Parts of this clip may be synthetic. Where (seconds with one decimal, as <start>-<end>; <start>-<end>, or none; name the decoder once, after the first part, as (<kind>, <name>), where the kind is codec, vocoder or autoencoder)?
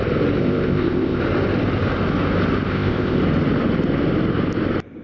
0.4-1.2 (codec, ZipCodec); 2.7-3.2